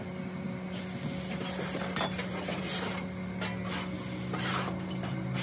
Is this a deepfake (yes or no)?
no